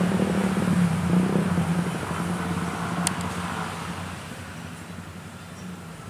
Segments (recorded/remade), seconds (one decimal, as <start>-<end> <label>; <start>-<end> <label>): 0.0-5.1 recorded; 5.1-6.1 remade